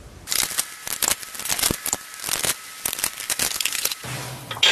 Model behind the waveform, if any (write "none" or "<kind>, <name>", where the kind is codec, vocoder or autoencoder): none